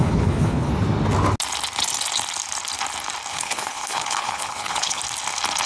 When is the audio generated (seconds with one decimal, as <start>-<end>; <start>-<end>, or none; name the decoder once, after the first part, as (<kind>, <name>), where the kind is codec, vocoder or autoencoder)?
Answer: 0.0-0.7 (codec, HILCodec); 3.3-5.0